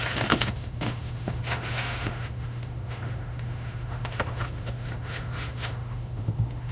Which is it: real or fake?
fake